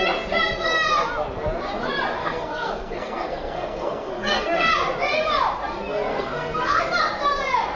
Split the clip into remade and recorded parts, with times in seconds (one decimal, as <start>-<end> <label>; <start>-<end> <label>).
0.0-2.2 recorded; 2.2-4.7 remade; 4.7-6.1 recorded; 6.1-6.8 remade; 6.8-7.8 recorded